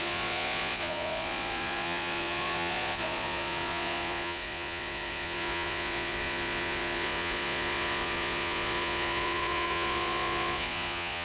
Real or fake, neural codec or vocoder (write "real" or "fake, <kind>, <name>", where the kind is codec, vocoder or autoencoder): fake, vocoder, Vocos